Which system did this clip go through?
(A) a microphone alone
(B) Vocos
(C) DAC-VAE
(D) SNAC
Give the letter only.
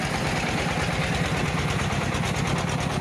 A